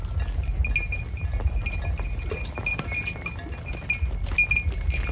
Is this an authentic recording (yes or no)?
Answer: yes